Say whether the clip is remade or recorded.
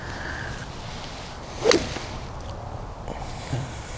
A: recorded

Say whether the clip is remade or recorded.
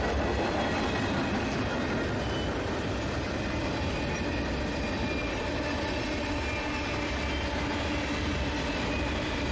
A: recorded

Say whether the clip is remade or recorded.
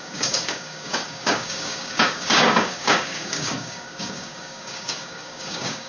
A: remade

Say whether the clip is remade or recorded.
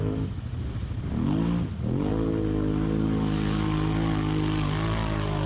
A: recorded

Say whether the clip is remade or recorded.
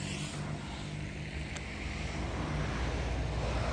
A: recorded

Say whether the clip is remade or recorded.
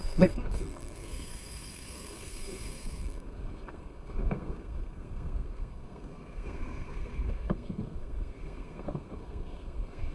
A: remade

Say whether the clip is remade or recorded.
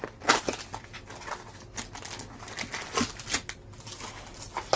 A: recorded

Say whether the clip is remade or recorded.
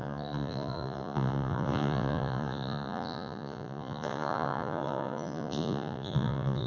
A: remade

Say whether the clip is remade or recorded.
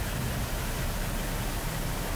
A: recorded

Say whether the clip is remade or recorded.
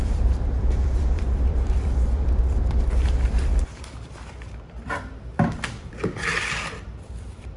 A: remade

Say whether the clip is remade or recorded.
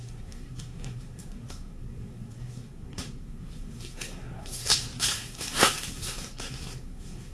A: remade